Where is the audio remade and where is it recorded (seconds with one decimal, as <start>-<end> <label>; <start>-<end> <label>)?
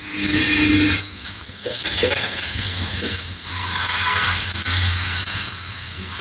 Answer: 0.0-0.4 remade; 0.4-1.0 recorded; 1.0-6.2 remade